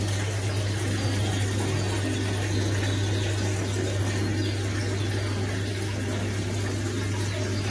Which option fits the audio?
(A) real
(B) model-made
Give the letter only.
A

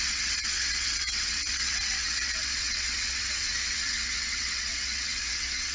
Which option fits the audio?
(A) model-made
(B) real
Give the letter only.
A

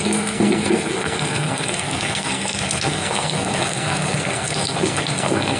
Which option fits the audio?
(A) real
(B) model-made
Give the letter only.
B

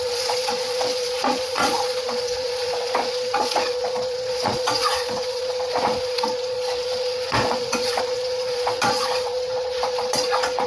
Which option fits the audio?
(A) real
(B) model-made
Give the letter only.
B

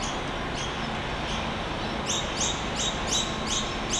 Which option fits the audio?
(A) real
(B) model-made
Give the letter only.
A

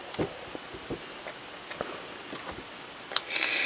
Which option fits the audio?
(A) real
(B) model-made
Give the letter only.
A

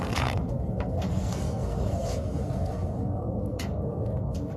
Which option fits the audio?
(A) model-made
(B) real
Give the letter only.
A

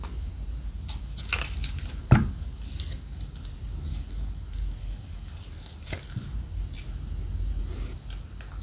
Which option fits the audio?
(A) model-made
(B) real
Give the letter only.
B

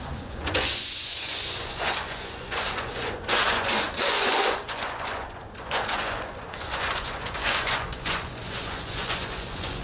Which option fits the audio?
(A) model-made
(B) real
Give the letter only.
A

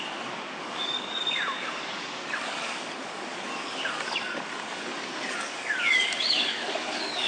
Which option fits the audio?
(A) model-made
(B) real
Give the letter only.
A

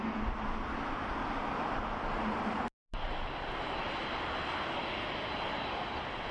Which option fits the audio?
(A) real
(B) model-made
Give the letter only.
A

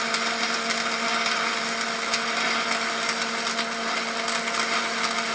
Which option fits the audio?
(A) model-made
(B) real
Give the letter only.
B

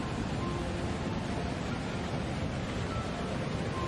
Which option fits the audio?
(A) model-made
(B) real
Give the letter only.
B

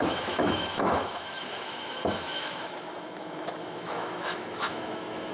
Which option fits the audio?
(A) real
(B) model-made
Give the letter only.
B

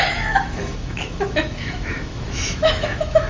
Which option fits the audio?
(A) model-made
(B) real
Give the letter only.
A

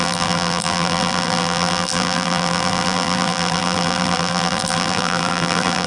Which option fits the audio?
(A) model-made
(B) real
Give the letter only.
A